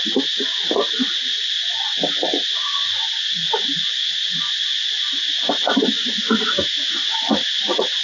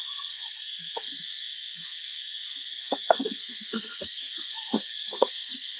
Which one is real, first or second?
first